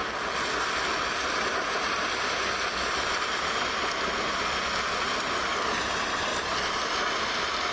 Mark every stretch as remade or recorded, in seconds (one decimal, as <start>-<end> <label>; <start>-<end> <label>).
0.0-7.7 recorded

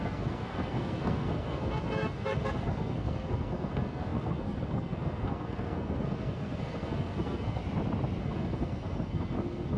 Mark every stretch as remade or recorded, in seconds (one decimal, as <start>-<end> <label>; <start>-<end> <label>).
0.0-7.6 remade; 7.6-8.2 recorded; 8.2-9.8 remade

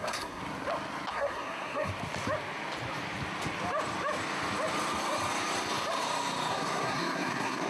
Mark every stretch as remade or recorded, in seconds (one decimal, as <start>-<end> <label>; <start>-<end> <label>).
0.0-0.4 remade; 0.4-1.1 recorded; 1.1-1.9 remade; 1.9-6.5 recorded; 6.5-7.7 remade

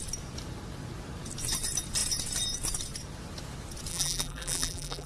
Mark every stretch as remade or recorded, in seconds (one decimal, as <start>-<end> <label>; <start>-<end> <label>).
0.0-3.9 recorded; 3.9-5.1 remade

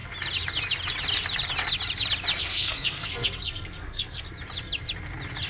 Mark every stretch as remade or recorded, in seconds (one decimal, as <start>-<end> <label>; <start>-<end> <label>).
0.0-2.4 recorded; 2.4-4.3 remade; 4.3-5.5 recorded